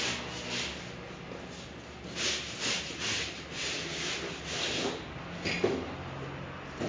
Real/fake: real